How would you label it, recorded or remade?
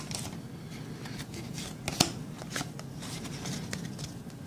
recorded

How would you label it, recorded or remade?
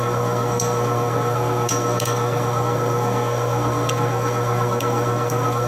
remade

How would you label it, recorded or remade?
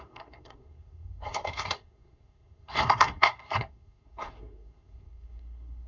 remade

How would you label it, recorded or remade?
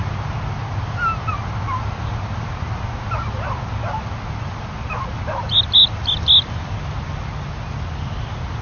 recorded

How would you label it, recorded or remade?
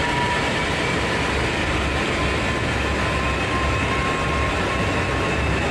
recorded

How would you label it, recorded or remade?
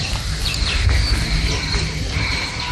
recorded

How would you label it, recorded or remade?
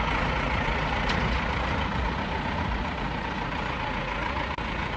remade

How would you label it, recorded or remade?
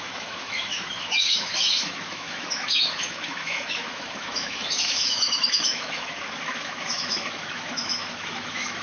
remade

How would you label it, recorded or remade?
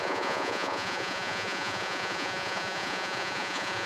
remade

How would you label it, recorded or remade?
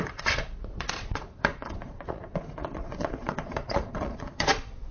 remade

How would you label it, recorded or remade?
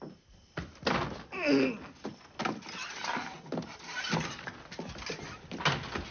recorded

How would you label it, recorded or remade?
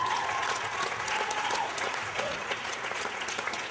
remade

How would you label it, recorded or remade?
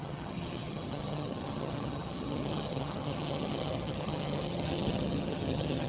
remade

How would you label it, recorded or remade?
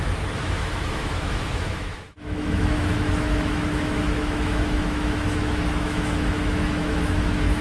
remade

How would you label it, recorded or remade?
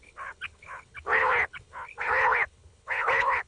remade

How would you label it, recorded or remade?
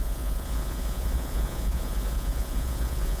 remade